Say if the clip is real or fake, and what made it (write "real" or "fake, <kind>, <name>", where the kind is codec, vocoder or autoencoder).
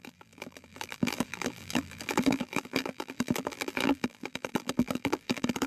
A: fake, vocoder, BigVGAN v2